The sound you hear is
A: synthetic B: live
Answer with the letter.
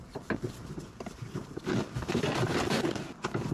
A